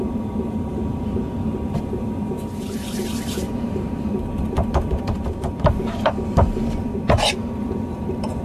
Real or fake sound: fake